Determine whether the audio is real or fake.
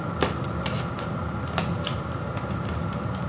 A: real